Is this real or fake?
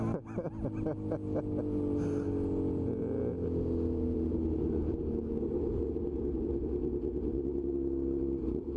real